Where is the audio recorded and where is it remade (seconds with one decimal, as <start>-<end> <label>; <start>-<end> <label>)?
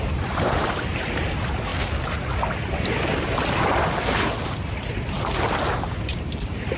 0.0-1.7 remade; 1.7-5.8 recorded; 5.8-6.8 remade